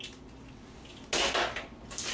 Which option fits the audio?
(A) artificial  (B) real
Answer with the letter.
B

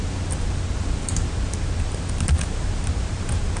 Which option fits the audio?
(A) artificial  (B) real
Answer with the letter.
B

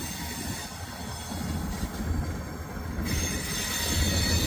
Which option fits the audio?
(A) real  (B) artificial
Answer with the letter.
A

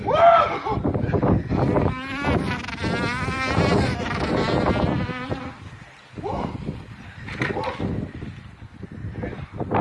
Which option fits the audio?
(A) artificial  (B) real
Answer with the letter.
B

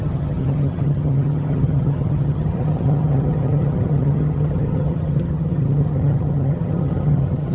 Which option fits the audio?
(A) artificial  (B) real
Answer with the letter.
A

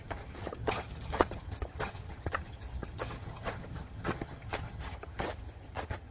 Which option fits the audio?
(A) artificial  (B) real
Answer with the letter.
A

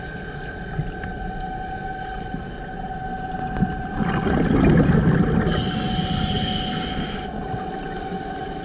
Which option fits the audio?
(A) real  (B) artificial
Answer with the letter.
A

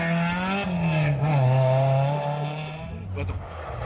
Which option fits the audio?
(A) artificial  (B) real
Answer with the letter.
B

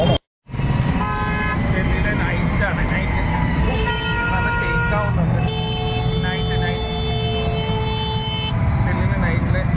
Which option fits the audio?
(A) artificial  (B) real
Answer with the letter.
B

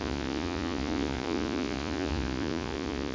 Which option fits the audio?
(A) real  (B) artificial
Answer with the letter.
B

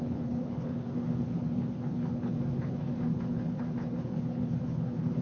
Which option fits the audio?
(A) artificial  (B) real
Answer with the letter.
A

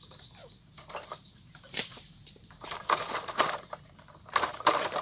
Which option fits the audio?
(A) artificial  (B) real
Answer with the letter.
A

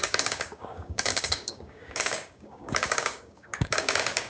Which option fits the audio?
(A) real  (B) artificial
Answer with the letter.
B